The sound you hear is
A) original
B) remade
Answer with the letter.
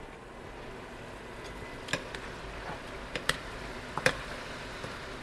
A